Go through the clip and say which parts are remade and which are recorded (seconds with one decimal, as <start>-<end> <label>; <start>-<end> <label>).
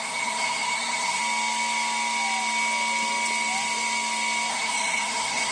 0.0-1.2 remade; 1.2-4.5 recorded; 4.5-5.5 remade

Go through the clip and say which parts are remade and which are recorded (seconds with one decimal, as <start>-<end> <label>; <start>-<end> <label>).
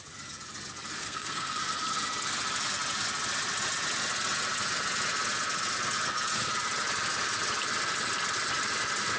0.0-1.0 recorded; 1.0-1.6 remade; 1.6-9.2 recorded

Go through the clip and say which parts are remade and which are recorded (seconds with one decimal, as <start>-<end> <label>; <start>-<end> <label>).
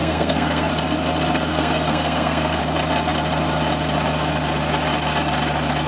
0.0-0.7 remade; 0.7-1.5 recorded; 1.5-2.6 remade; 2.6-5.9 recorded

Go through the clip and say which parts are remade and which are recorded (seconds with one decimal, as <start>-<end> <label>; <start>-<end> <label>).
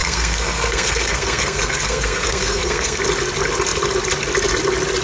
0.0-3.0 remade; 3.0-5.0 recorded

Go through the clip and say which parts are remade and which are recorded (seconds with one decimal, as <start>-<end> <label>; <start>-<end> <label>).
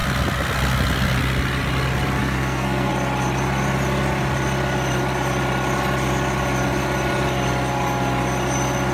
0.0-2.2 recorded; 2.2-2.9 remade; 2.9-8.9 recorded